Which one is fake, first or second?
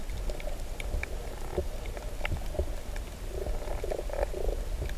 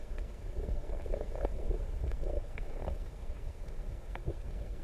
second